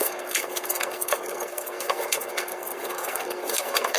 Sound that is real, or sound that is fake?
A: fake